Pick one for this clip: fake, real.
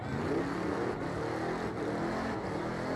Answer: real